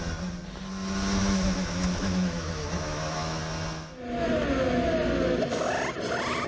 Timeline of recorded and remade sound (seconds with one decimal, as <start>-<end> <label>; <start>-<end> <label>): 0.0-1.2 recorded; 1.2-3.4 remade; 3.4-6.5 recorded